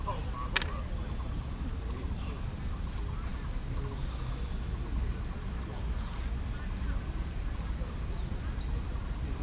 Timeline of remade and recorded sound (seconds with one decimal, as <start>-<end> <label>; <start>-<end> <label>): 0.0-9.4 recorded